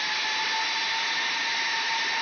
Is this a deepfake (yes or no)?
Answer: no